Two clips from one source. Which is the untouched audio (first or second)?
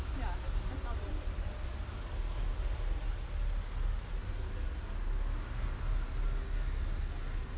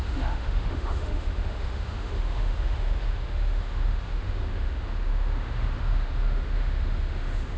first